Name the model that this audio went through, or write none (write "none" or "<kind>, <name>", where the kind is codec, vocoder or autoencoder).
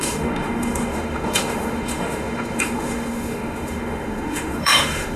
autoencoder, DAC-VAE